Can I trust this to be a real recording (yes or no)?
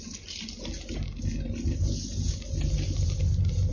yes